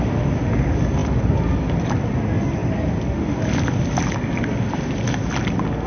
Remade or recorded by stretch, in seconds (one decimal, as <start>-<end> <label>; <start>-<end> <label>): 0.0-5.9 recorded